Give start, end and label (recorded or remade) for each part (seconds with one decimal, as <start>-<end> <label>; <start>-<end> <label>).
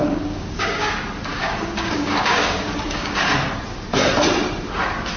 0.0-0.9 remade; 0.9-1.3 recorded; 1.3-3.3 remade; 3.3-5.2 recorded